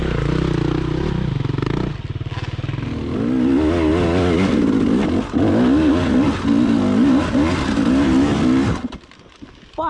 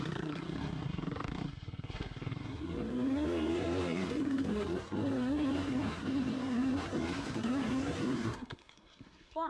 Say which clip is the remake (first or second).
second